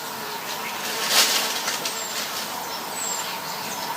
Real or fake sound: real